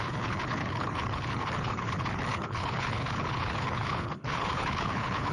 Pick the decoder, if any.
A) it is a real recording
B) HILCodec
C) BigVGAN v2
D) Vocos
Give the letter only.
B